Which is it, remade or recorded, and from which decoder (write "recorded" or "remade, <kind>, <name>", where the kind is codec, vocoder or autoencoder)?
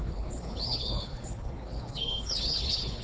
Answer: remade, codec, HILCodec